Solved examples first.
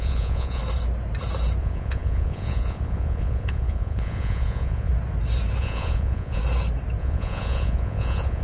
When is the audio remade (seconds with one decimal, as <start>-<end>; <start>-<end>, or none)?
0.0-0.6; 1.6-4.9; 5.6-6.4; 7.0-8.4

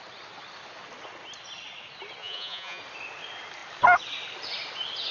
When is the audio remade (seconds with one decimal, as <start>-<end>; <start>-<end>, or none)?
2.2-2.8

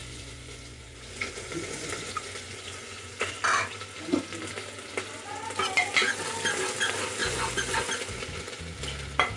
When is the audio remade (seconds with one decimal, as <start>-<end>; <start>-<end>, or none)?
0.0-3.4; 7.2-8.6